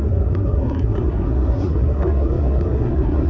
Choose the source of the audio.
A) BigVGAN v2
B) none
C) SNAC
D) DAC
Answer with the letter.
C